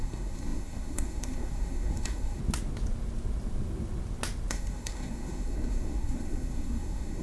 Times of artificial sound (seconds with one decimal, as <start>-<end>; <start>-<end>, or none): 0.0-2.4; 4.5-7.2